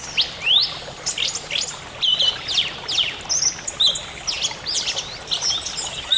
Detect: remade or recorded recorded